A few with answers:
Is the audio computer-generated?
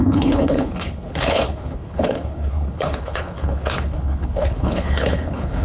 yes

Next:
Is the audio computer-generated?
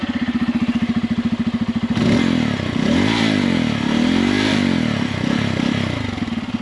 no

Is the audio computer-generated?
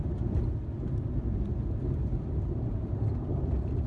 no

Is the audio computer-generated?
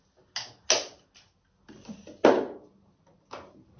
no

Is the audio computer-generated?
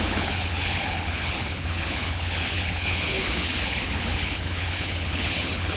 yes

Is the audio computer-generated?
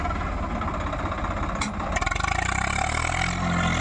no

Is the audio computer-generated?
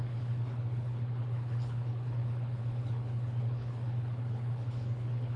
yes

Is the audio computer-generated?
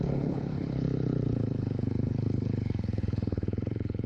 yes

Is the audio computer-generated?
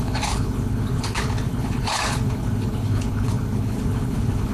yes